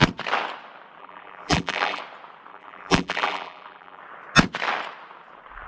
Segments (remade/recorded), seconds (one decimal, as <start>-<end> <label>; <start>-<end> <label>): 0.0-1.0 recorded; 1.0-2.0 remade; 2.0-2.5 recorded; 2.5-4.0 remade; 4.0-5.7 recorded